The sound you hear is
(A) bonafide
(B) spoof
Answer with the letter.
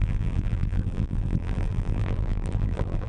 B